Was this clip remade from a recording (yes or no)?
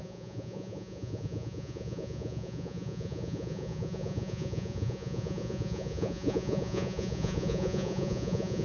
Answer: yes